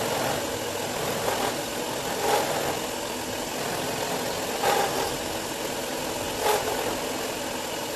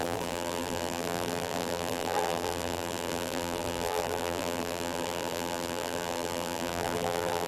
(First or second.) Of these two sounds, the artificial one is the second